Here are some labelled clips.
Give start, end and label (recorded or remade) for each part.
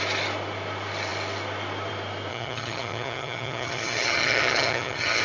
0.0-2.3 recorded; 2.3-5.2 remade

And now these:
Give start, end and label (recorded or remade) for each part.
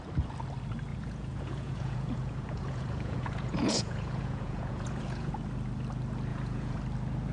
0.0-0.9 recorded; 0.9-5.3 remade; 5.3-6.3 recorded; 6.3-6.8 remade; 6.8-7.3 recorded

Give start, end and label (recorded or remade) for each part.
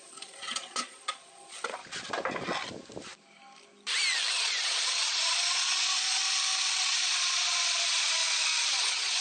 0.0-1.8 remade; 1.8-4.3 recorded; 4.3-6.2 remade; 6.2-6.8 recorded; 6.8-8.2 remade; 8.2-8.7 recorded; 8.7-9.2 remade